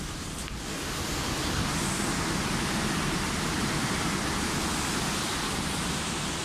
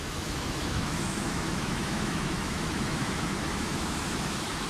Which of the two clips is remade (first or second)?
second